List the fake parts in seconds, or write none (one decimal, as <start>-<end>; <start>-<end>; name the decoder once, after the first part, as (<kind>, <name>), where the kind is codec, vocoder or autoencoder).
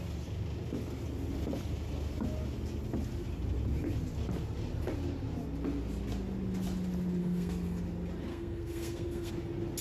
7.2-7.8 (codec, SNAC); 8.3-9.3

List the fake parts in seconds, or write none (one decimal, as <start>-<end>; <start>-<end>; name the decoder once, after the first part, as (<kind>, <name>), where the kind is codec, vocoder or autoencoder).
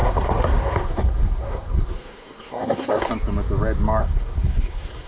0.0-3.1 (codec, SNAC); 4.0-5.1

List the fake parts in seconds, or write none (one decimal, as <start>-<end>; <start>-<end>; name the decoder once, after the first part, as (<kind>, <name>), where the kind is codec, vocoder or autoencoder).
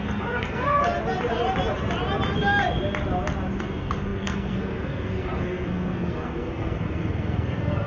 0.0-0.8 (codec, SNAC); 3.6-7.9